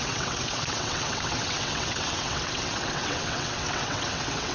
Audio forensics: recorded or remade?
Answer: remade